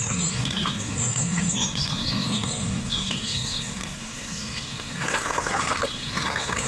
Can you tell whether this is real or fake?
fake